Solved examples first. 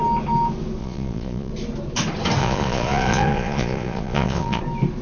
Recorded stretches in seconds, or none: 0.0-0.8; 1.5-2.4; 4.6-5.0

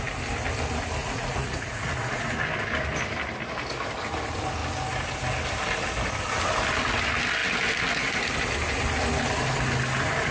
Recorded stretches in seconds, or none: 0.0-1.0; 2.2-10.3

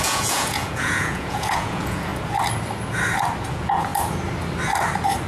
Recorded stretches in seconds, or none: 2.1-3.5; 3.9-5.3

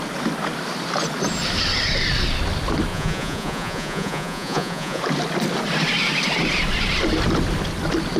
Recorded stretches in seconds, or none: 0.0-2.9; 5.0-8.2

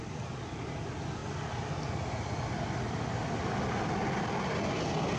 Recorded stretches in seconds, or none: 0.0-5.2